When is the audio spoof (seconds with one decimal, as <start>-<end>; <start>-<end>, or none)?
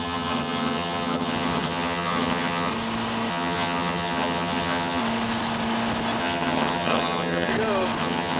0.0-2.7; 3.3-5.0; 6.2-7.5; 8.0-8.4